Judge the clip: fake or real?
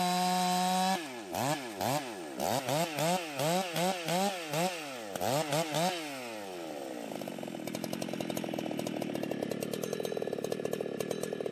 real